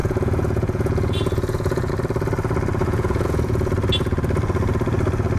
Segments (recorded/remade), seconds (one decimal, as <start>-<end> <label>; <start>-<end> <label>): 0.0-1.9 remade; 1.9-2.8 recorded; 2.8-3.7 remade; 3.7-5.4 recorded